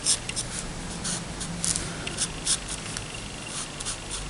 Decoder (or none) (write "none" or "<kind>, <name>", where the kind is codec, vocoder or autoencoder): none